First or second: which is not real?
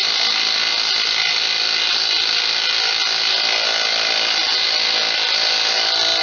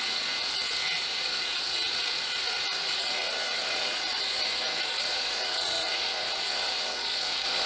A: second